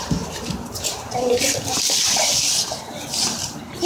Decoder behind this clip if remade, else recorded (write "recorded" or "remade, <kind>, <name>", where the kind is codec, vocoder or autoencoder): remade, vocoder, BigVGAN v2